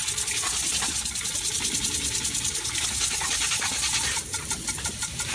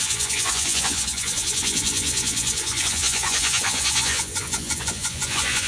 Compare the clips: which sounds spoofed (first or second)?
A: second